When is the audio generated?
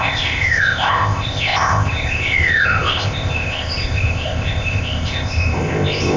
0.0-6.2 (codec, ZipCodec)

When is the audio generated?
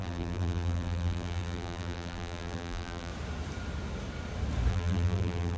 0.0-3.1 (vocoder, BigVGAN v2); 4.7-5.6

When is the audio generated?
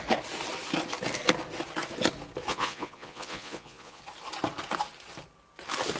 2.5-4.0 (vocoder, Vocos)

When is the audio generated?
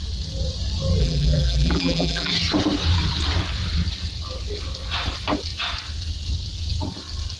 1.0-2.3 (vocoder, BigVGAN v2)